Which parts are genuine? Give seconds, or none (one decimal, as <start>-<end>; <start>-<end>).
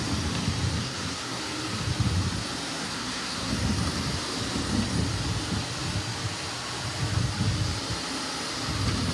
0.0-0.8; 1.4-2.8; 3.5-9.1